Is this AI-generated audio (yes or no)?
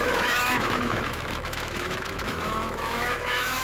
yes